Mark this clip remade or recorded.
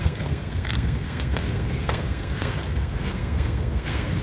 remade